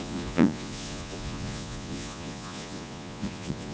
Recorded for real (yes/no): no